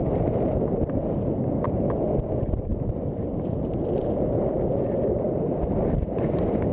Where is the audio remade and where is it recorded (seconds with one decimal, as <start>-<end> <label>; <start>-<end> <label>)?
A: 0.0-4.0 recorded; 4.0-4.7 remade; 4.7-6.7 recorded